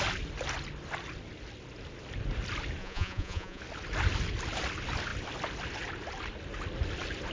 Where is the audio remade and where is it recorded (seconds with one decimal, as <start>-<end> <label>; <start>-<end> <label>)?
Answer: 0.0-2.8 recorded; 2.8-3.6 remade; 3.6-7.3 recorded